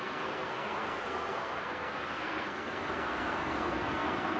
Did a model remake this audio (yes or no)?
yes